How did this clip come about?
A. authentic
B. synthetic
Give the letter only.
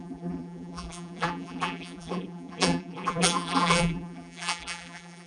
B